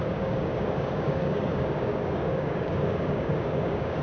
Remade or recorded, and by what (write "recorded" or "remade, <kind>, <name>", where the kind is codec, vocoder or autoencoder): remade, codec, DAC